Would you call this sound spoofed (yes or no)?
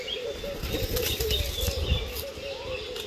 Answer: no